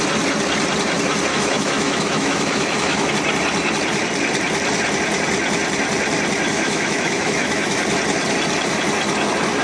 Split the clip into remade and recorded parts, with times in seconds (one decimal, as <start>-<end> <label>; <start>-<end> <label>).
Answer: 0.0-1.3 recorded; 1.3-3.1 remade; 3.1-6.5 recorded; 6.5-7.8 remade; 7.8-9.6 recorded